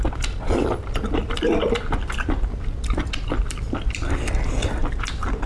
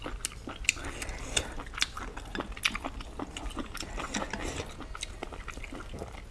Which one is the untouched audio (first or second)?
second